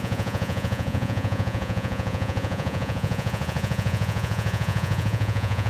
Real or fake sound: fake